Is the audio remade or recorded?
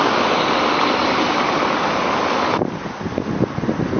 recorded